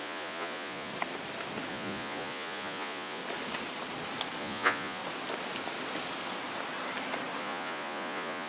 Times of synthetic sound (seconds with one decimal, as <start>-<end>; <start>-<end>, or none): 0.0-0.9; 1.7-3.2; 4.4-5.0; 7.4-8.5